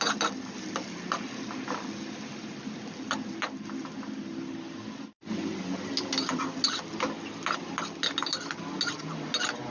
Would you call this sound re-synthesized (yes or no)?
no